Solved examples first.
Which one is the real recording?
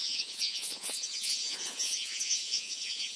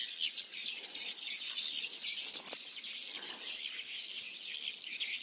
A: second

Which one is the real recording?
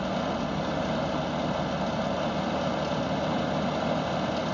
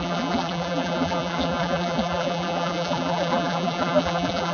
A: first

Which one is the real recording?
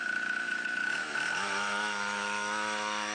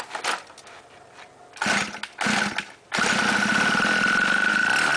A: second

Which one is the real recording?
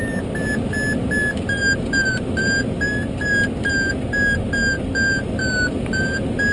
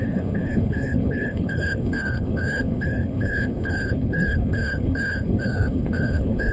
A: first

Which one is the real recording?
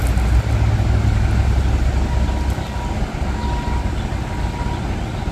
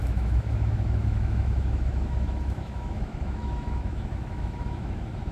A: first